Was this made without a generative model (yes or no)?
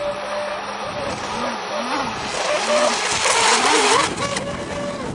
yes